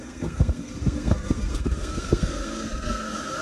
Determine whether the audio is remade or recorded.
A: remade